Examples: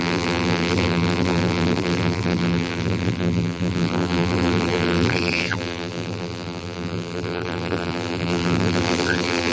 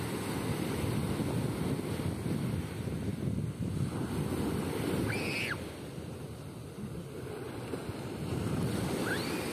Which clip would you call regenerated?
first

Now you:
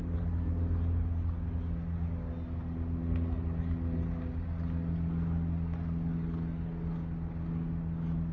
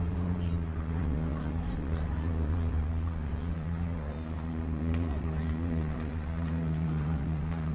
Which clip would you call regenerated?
second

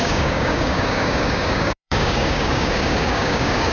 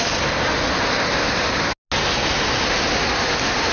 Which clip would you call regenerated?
first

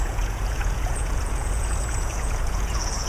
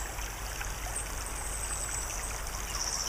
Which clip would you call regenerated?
first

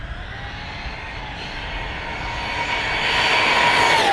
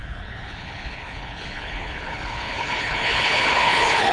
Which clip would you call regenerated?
second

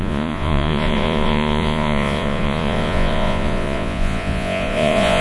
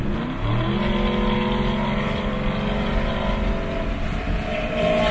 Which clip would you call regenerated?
first